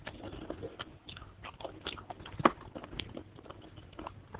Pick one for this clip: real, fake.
real